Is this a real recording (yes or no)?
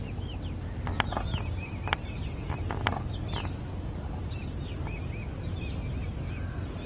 yes